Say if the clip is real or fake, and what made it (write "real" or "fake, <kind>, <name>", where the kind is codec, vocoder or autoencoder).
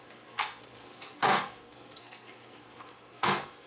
fake, codec, SNAC